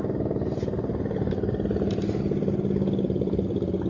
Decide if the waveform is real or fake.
real